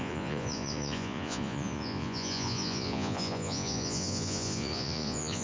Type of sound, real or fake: fake